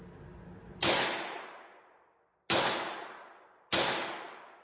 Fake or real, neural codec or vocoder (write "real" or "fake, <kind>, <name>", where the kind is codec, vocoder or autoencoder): real